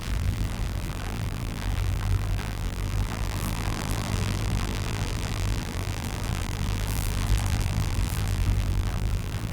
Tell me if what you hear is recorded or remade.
remade